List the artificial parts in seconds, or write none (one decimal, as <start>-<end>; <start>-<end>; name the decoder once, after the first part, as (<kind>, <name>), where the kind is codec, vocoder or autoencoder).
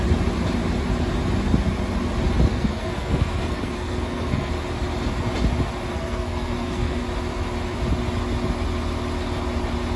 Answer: 2.5-4.5 (codec, SNAC); 5.9-7.0